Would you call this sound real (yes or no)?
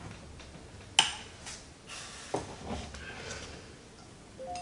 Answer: yes